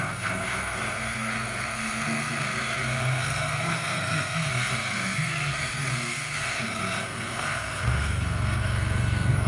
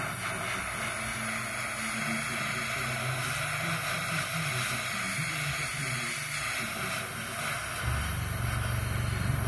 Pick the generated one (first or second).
first